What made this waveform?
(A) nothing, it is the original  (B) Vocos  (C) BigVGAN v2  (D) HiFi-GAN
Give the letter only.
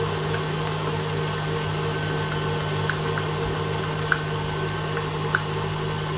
A